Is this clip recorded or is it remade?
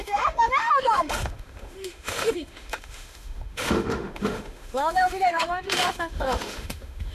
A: remade